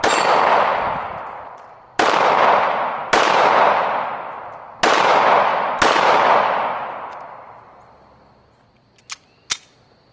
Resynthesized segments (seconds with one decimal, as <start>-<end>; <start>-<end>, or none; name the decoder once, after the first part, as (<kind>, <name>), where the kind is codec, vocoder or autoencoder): none